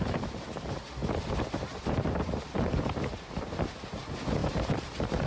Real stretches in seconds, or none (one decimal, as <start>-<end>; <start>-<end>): none